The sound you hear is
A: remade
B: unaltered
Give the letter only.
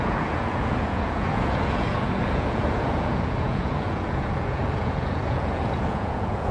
A